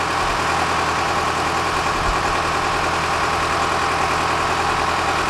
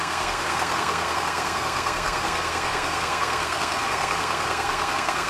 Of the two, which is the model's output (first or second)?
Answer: second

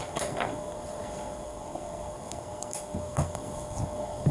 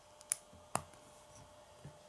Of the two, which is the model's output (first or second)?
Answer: first